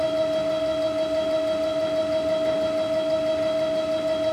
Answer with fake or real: real